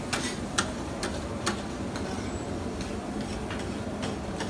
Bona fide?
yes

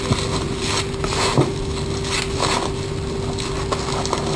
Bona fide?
yes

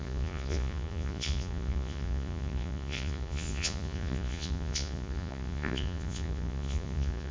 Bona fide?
no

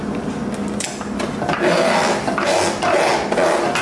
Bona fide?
yes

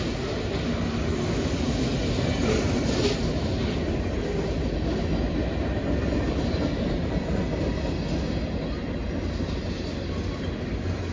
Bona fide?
yes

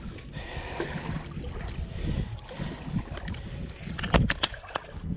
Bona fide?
yes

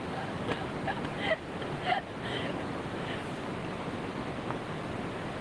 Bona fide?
yes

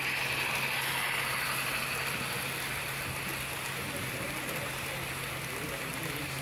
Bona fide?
yes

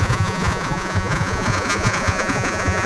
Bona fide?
no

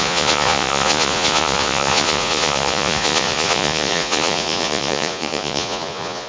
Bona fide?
no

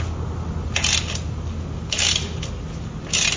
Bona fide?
yes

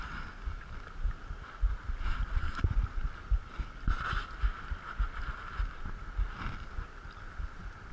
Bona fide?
yes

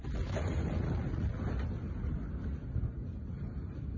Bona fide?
yes